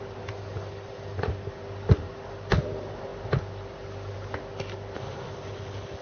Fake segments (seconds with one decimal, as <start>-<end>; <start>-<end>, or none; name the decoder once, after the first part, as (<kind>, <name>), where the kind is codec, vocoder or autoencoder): none